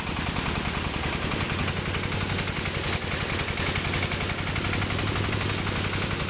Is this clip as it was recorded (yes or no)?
yes